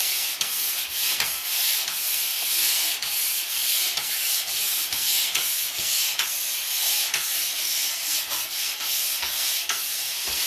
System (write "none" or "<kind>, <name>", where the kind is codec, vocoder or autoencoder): codec, SNAC